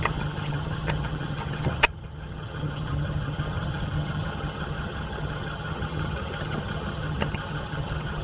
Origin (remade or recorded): remade